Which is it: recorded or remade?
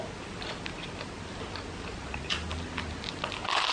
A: recorded